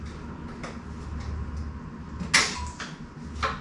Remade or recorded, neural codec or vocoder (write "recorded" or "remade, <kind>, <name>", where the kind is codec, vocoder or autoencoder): recorded